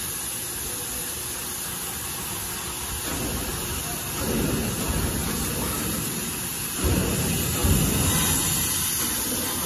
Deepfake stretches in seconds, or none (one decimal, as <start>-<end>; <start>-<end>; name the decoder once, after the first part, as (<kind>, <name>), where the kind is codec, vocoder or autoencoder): 5.2-7.1 (vocoder, BigVGAN v2)